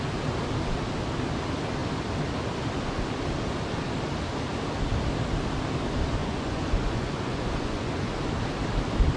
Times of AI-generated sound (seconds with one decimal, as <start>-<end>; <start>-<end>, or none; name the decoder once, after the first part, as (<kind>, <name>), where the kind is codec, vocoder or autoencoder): 6.2-8.1 (vocoder, Vocos)